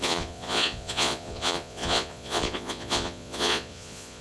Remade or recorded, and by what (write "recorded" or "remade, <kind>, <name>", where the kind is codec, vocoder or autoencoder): remade, vocoder, Vocos